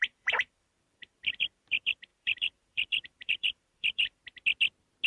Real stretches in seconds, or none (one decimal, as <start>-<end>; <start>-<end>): 4.2-5.1